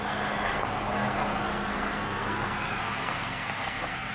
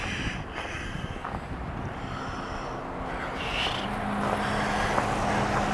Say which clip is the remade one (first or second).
first